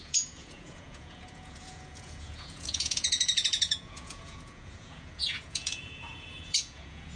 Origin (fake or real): fake